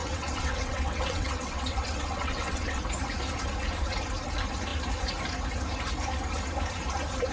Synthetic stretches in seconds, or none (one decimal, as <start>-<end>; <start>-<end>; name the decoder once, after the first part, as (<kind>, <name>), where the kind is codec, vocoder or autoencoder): 0.0-2.8 (vocoder, WaveNeXt)